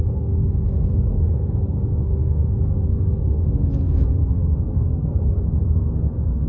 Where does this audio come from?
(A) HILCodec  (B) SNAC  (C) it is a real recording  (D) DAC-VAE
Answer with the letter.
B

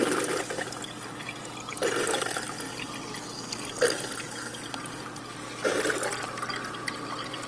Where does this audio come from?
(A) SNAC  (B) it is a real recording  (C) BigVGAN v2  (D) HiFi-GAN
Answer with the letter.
B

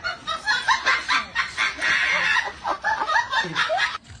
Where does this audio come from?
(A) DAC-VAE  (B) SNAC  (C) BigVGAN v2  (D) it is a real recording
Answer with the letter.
D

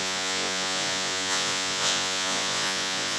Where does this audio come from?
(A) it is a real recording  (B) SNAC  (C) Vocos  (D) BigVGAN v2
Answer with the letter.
C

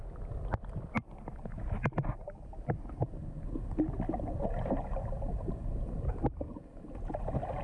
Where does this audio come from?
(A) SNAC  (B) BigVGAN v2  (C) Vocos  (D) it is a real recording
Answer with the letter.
D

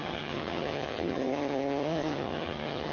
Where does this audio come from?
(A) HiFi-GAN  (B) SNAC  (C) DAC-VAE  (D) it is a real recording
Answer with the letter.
A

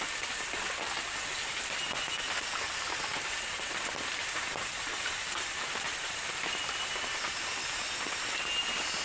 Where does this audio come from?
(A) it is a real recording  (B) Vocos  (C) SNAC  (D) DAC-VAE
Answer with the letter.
A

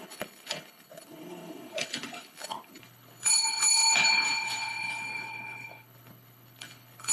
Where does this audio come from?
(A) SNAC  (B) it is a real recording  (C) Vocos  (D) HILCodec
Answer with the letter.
D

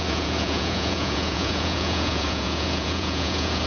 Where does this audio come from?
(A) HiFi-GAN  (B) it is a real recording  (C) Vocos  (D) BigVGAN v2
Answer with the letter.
C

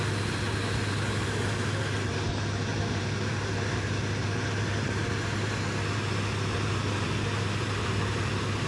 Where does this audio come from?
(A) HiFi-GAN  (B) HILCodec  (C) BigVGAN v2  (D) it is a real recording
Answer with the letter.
D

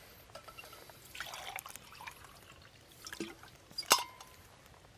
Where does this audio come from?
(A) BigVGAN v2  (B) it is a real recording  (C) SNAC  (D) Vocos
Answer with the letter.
B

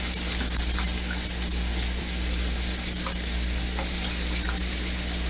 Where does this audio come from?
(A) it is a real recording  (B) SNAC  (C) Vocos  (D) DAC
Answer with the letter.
A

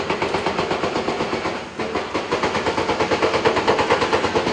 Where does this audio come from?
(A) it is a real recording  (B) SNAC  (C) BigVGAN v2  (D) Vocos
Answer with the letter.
A